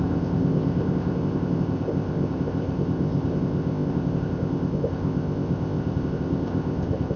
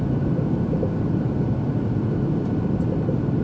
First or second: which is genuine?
second